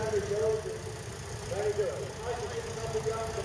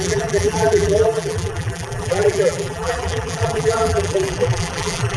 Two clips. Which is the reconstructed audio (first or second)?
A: second